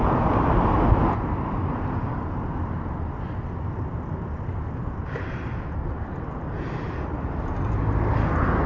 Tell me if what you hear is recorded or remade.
recorded